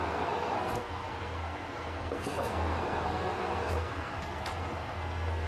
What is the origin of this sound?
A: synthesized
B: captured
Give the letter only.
A